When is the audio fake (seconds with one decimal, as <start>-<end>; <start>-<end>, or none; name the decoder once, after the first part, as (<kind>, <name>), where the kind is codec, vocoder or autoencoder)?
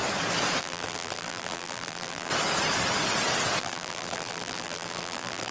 0.6-2.3 (vocoder, BigVGAN v2); 3.6-5.5